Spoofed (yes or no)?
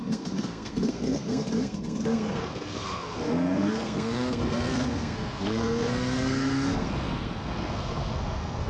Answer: yes